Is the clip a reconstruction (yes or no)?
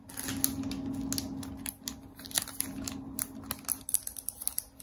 no